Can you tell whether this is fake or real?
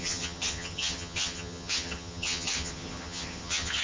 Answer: fake